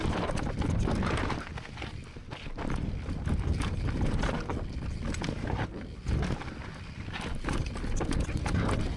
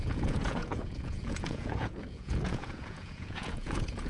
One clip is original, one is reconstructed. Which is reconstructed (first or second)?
second